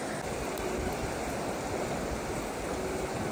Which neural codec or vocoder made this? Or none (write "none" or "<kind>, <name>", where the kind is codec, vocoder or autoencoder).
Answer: none